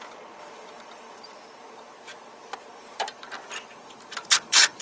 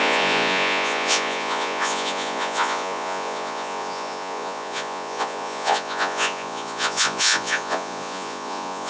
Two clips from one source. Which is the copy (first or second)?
second